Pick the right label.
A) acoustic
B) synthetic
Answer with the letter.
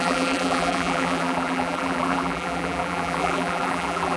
B